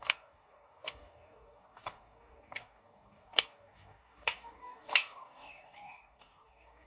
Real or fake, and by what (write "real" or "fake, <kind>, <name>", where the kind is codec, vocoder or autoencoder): fake, codec, DAC